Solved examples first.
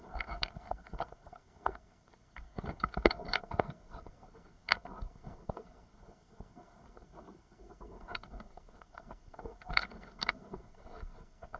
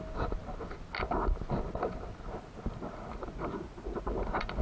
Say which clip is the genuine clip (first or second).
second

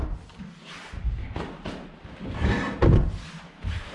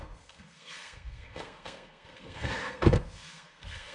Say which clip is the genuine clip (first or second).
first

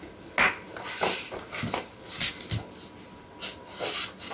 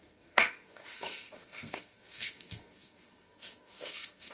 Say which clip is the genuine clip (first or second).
first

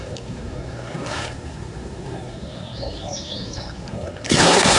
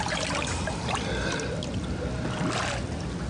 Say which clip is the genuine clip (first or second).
second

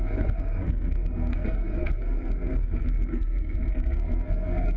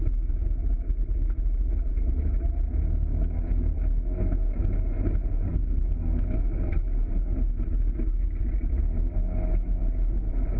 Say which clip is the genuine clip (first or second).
second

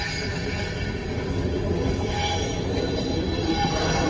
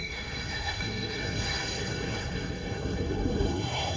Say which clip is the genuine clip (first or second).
first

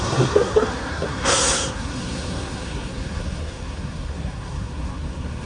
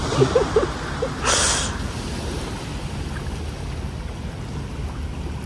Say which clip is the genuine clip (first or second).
second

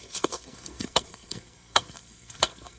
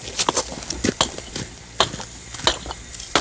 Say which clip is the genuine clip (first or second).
second